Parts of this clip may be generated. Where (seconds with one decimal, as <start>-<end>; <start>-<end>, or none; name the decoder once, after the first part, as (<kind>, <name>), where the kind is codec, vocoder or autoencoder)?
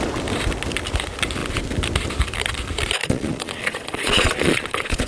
3.0-5.1 (vocoder, Vocos)